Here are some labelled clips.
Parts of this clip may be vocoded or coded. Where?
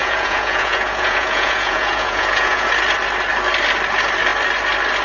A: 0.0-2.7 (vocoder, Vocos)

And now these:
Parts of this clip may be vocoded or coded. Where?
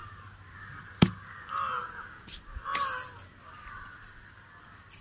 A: 0.0-2.1 (vocoder, BigVGAN v2)